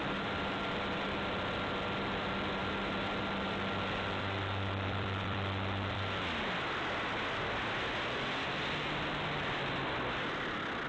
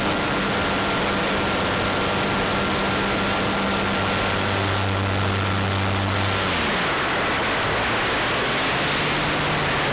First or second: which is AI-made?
first